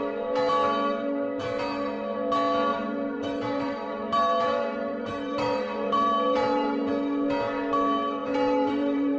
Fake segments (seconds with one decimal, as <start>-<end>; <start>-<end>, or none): 2.7-6.9; 8.2-9.2